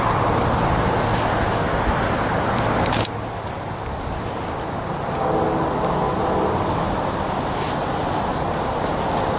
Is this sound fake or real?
real